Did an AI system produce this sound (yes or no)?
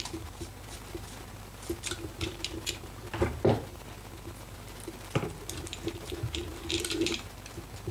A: yes